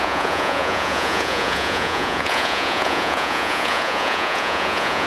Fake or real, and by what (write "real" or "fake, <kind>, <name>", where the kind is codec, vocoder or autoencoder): fake, vocoder, Vocos